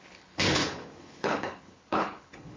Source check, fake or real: fake